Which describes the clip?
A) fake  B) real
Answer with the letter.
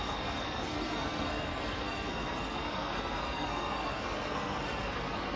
A